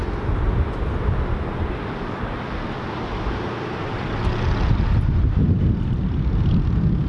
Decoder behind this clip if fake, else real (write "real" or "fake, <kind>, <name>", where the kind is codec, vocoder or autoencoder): real